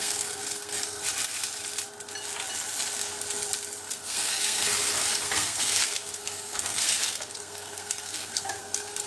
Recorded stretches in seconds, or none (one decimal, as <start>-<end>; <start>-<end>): 1.0-3.8